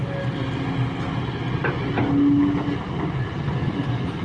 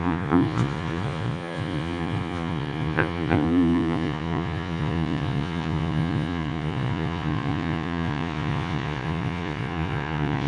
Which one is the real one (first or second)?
first